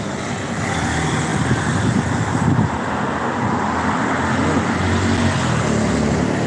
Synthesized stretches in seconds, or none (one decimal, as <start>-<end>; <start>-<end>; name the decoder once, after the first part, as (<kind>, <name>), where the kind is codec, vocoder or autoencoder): none